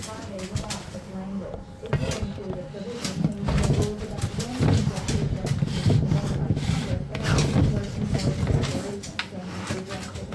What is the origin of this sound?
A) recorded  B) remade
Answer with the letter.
A